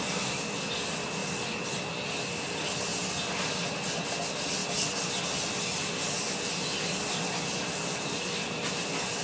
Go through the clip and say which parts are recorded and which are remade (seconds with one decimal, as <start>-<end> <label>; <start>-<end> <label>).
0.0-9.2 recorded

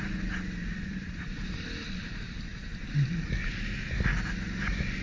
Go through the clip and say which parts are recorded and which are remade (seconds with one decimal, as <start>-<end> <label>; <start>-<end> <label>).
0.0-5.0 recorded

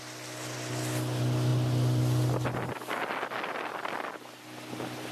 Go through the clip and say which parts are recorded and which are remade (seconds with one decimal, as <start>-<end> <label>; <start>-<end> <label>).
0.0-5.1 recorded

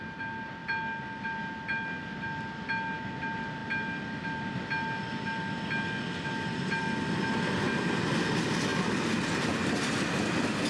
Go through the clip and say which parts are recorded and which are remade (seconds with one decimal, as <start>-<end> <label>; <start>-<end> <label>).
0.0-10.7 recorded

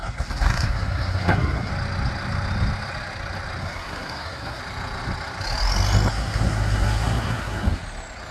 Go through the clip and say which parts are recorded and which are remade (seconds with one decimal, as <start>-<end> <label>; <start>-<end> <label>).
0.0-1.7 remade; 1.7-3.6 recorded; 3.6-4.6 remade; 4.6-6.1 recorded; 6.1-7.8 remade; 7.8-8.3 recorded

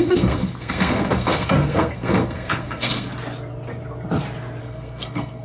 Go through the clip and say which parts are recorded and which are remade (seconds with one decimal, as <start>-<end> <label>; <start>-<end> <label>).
0.0-3.1 remade; 3.1-4.6 recorded; 4.6-5.4 remade

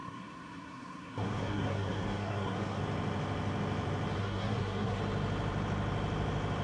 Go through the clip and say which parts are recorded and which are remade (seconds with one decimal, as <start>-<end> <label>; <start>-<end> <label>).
0.0-2.8 remade; 2.8-4.2 recorded; 4.2-5.0 remade; 5.0-6.6 recorded